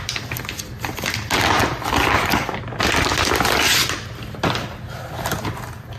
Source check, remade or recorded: recorded